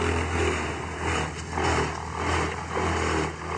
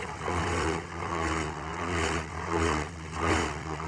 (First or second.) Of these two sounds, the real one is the first